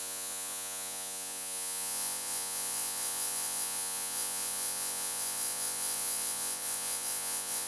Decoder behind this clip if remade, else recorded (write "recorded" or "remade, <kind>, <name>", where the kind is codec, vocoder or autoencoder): remade, vocoder, Vocos